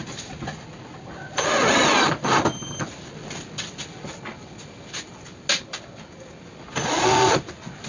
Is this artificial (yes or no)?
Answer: no